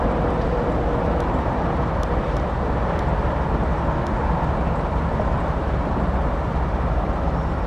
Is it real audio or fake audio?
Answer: fake